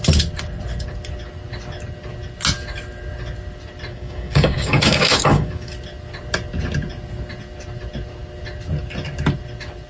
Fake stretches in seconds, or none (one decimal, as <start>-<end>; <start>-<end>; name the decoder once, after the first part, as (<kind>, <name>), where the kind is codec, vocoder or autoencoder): 3.9-5.7 (codec, DAC)